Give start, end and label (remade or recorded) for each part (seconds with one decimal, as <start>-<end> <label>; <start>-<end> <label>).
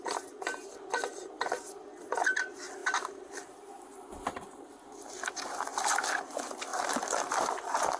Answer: 0.0-5.7 recorded; 5.7-6.2 remade; 6.2-8.0 recorded